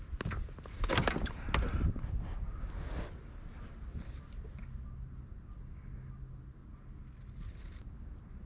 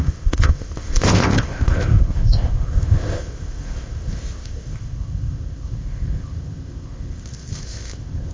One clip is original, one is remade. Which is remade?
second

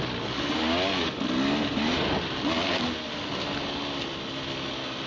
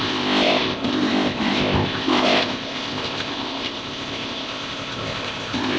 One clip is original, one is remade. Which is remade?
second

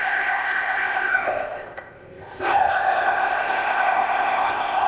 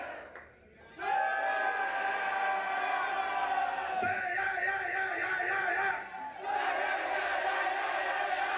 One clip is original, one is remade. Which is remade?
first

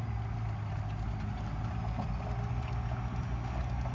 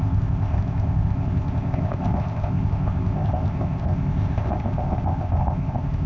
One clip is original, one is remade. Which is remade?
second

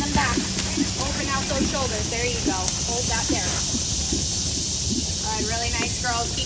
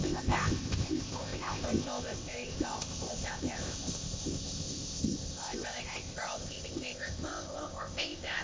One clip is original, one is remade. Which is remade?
second